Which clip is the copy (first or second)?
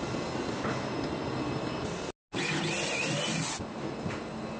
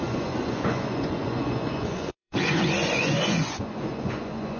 second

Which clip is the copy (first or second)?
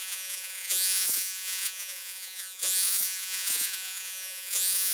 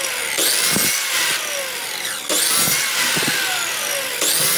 first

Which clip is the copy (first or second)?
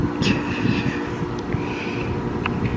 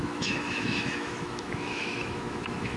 second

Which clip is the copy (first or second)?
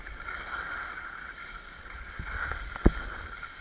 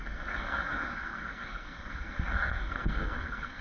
second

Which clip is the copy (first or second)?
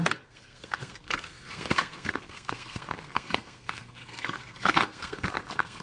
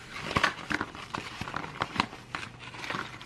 first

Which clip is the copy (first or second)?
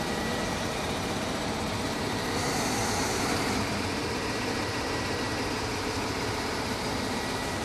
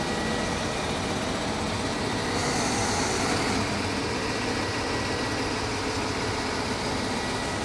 first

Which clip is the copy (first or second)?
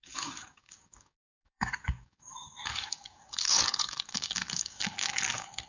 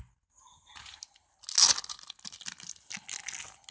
first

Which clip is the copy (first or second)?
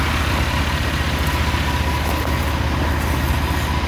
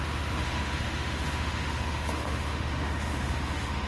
second